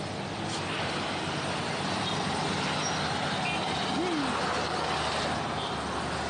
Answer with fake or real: real